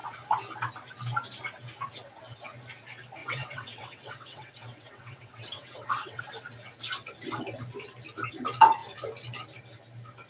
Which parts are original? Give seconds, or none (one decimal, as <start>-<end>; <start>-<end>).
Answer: 0.0-3.2; 6.2-10.3